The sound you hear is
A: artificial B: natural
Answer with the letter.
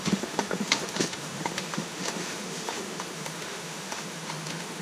A